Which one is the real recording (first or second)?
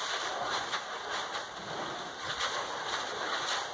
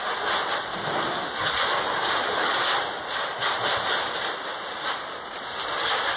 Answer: second